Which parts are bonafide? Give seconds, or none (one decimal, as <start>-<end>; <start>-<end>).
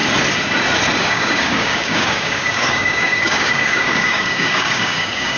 0.0-1.0